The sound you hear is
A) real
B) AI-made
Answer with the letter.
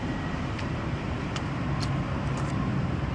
B